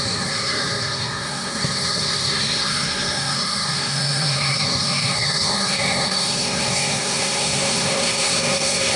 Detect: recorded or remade remade